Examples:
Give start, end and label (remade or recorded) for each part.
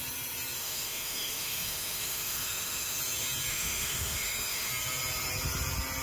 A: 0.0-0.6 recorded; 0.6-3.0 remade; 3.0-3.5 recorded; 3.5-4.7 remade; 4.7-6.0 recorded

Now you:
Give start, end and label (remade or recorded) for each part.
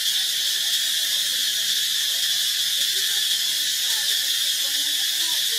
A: 0.0-5.6 recorded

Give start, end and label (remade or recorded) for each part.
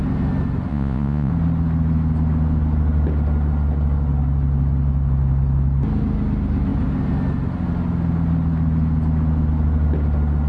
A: 0.0-0.7 recorded; 0.7-1.3 remade; 1.3-10.5 recorded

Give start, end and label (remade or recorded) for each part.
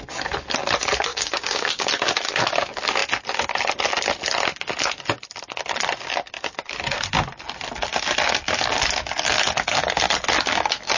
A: 0.0-1.1 recorded; 1.1-1.9 remade; 1.9-11.0 recorded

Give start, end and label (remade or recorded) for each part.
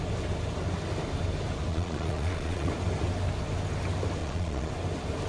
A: 0.0-1.7 recorded; 1.7-2.7 remade; 2.7-4.2 recorded; 4.2-4.7 remade; 4.7-5.3 recorded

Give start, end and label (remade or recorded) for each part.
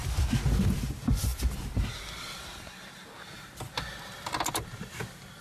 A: 0.0-0.9 recorded; 0.9-1.3 remade; 1.3-4.5 recorded; 4.5-5.4 remade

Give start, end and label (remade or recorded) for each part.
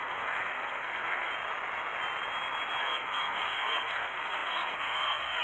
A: 0.0-1.3 remade; 1.3-2.8 recorded; 2.8-5.4 remade